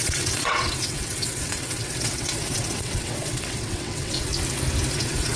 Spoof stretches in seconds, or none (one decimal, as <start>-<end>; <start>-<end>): 0.0-4.3; 4.9-5.4